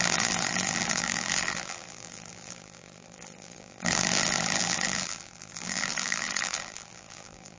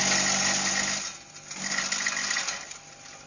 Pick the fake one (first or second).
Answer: first